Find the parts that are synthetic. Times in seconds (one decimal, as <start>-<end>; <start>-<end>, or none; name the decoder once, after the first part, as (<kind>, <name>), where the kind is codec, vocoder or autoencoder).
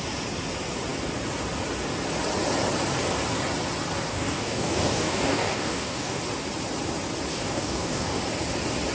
4.1-6.2 (codec, DAC); 7.3-8.2